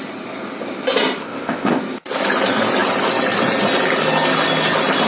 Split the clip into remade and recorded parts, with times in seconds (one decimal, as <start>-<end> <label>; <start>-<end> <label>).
0.0-1.2 recorded; 1.2-1.8 remade; 1.8-5.1 recorded

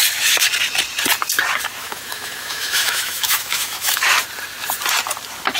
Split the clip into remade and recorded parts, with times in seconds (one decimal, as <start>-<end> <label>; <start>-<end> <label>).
0.0-1.8 recorded; 1.8-4.0 remade; 4.0-5.6 recorded

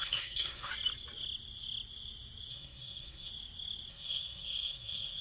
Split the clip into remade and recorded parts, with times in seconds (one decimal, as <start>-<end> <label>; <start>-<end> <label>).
0.0-0.7 remade; 0.7-2.5 recorded; 2.5-3.3 remade; 3.3-3.9 recorded; 3.9-5.2 remade

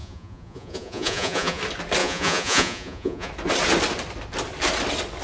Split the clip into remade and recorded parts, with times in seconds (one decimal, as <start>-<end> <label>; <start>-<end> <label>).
0.0-1.6 remade; 1.6-2.0 recorded; 2.0-3.3 remade; 3.3-5.2 recorded